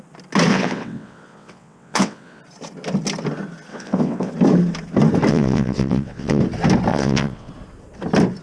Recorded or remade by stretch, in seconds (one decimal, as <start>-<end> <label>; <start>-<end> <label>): 0.0-0.5 recorded; 0.5-2.4 remade; 2.4-3.7 recorded; 3.7-4.3 remade; 4.3-5.3 recorded; 5.3-6.4 remade; 6.4-6.9 recorded; 6.9-7.5 remade; 7.5-8.4 recorded